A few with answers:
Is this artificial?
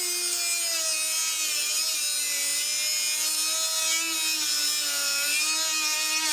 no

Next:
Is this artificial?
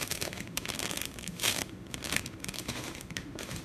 yes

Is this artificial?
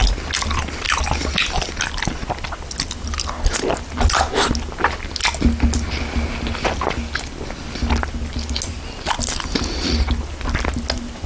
no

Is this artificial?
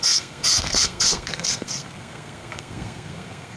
yes